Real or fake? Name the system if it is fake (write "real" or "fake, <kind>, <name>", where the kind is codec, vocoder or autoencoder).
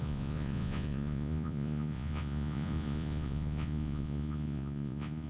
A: fake, vocoder, Vocos